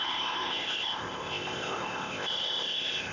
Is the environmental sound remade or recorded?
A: remade